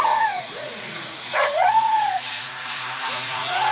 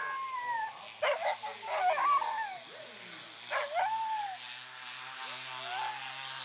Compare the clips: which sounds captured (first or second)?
second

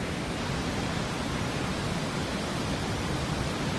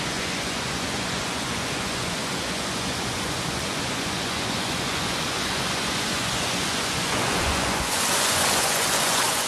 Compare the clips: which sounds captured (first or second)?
first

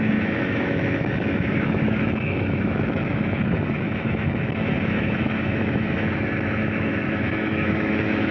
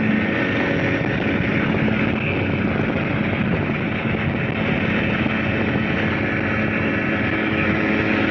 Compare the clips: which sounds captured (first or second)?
second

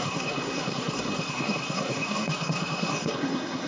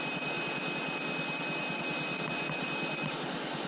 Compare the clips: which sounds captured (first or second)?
second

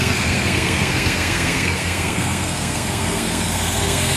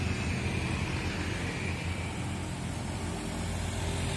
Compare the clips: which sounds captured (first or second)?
second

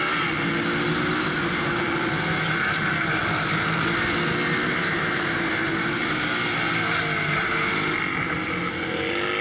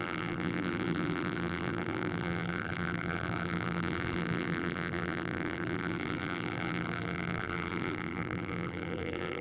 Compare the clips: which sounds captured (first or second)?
first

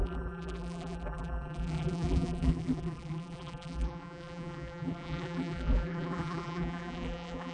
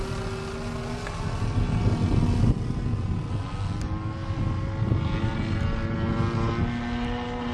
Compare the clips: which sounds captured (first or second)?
second